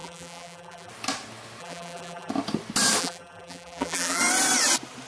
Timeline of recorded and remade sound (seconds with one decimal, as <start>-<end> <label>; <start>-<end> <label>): 0.0-0.9 remade; 0.9-1.6 recorded; 1.6-2.3 remade; 2.3-3.0 recorded; 3.0-4.2 remade; 4.2-5.1 recorded